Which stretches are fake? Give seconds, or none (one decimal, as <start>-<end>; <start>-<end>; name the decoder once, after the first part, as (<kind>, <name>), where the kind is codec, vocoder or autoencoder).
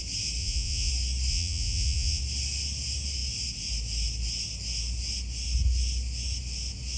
0.4-0.9 (vocoder, Vocos); 1.3-2.2